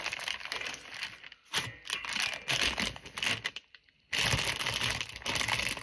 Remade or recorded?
recorded